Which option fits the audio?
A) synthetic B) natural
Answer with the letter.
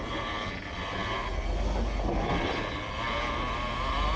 B